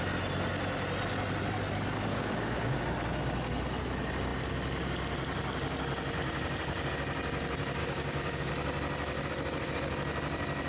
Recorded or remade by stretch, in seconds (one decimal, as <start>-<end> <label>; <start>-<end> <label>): 0.0-2.1 recorded; 2.1-2.8 remade; 2.8-7.8 recorded; 7.8-8.5 remade; 8.5-10.7 recorded